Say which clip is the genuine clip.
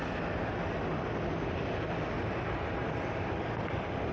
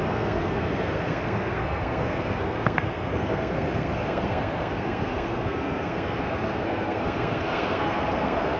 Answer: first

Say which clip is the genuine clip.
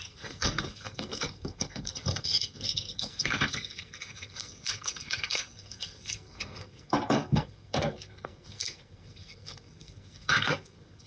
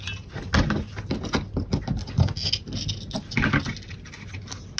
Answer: second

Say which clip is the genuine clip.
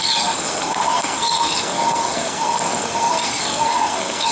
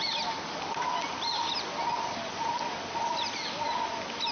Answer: second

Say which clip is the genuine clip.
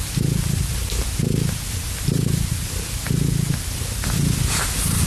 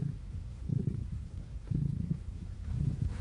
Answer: first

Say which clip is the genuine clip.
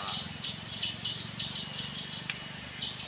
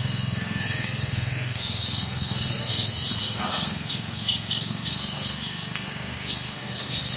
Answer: first